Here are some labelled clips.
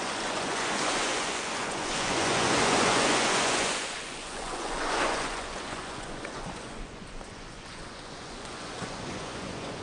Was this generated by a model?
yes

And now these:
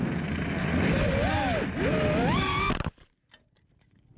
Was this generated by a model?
no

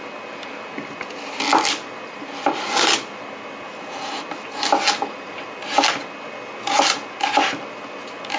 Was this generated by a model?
no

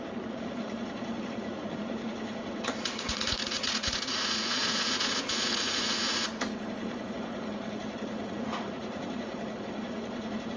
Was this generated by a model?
yes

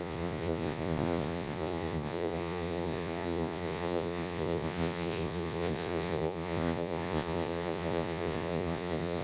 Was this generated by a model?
yes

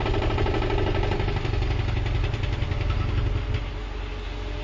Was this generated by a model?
no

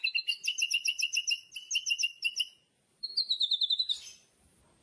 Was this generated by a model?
no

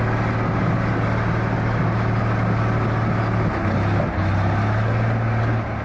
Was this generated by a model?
no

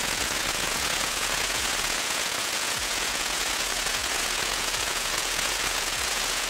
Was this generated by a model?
yes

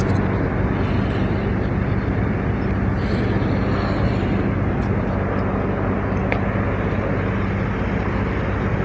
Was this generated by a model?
no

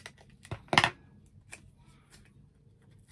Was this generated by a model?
no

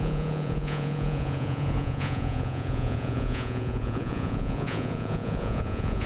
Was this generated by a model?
yes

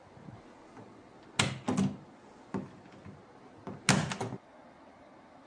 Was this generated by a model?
no